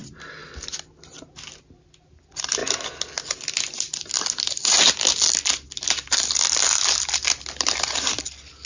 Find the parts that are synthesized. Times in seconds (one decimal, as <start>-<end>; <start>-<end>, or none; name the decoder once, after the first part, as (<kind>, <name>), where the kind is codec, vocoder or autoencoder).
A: none